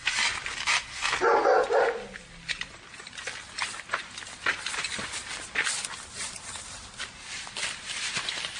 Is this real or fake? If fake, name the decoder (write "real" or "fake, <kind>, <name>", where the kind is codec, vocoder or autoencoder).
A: real